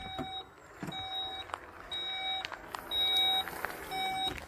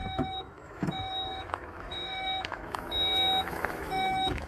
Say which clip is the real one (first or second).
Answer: first